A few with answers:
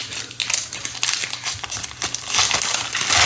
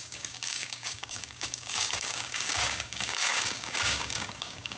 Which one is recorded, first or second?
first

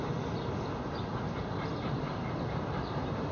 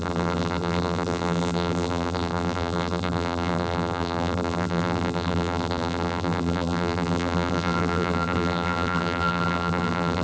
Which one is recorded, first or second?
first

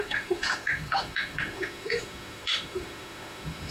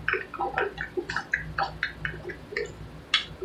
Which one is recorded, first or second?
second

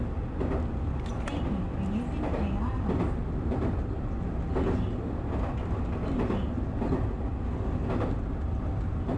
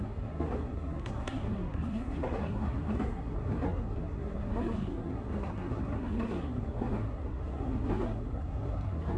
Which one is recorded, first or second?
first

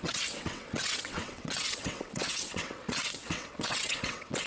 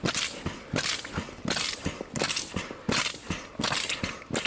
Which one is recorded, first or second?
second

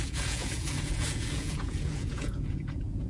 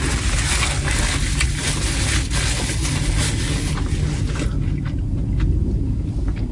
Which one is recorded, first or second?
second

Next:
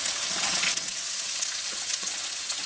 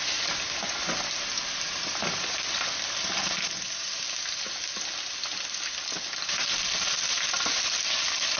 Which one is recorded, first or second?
second